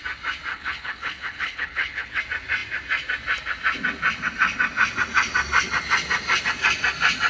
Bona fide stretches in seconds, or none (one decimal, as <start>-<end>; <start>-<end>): 0.0-0.5; 2.2-7.3